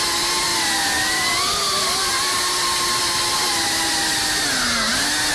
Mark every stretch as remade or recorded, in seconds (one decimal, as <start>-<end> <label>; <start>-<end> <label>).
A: 0.0-5.3 recorded